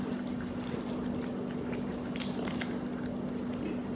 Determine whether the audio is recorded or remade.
recorded